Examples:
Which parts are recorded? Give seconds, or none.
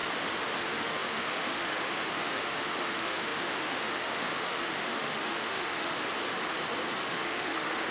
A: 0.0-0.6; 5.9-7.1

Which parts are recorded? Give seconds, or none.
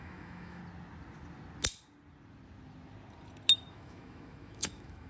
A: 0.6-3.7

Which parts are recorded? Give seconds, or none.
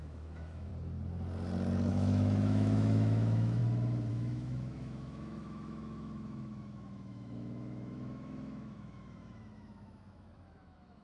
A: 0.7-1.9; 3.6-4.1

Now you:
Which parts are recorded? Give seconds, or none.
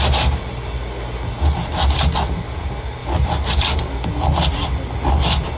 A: 0.0-5.6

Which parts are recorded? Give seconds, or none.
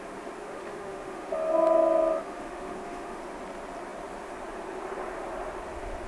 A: 0.0-0.4; 1.3-2.2; 3.2-6.1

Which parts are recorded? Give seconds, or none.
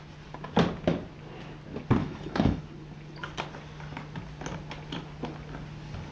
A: 0.0-2.0; 2.6-6.1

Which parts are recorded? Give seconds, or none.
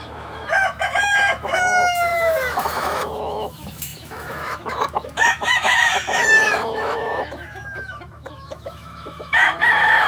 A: none